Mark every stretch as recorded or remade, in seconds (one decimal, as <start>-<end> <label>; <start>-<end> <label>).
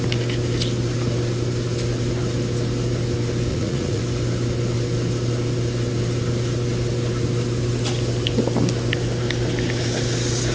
0.0-3.5 recorded; 3.5-4.0 remade; 4.0-10.5 recorded